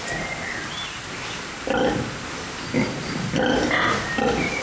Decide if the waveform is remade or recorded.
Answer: recorded